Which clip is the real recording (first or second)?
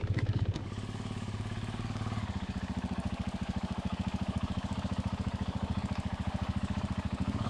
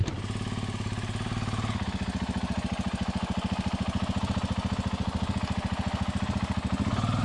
second